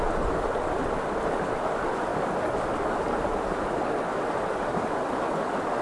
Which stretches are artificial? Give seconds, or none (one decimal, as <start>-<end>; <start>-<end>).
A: none